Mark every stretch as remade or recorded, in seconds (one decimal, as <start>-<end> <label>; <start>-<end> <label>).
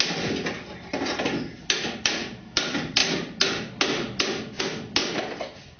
0.0-5.8 recorded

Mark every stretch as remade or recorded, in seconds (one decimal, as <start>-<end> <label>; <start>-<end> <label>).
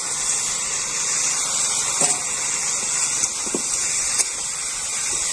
0.0-5.3 recorded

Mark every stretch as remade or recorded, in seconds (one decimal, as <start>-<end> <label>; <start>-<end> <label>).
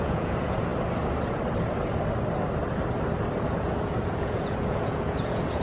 0.0-0.7 remade; 0.7-3.5 recorded; 3.5-5.6 remade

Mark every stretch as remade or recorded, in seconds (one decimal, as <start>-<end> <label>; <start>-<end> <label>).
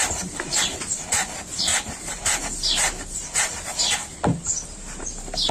0.0-5.5 recorded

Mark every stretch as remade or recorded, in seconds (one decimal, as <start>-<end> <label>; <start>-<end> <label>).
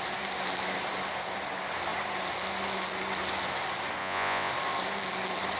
0.0-4.0 recorded; 4.0-4.5 remade; 4.5-5.6 recorded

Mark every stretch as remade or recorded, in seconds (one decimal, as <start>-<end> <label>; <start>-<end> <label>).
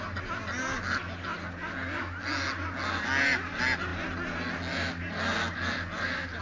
0.0-6.4 recorded